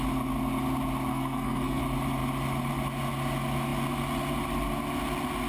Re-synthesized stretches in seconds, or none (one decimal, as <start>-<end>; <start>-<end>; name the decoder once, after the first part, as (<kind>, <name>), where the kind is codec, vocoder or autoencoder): 1.1-1.8 (codec, SNAC)